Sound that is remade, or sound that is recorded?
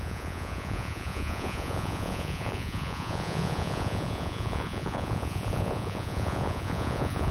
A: remade